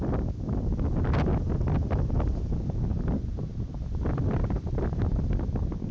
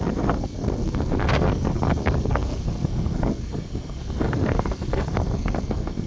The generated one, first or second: second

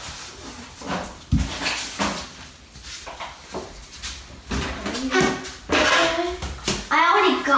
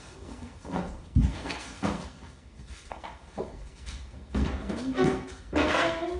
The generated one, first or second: second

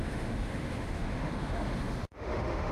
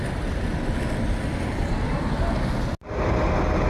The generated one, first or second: first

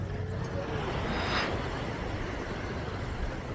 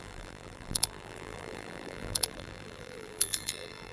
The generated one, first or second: second